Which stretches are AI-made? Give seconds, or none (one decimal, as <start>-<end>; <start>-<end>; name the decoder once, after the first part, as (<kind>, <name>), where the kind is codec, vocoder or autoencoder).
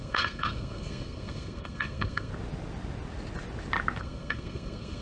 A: 0.0-2.3 (codec, SNAC); 4.0-5.0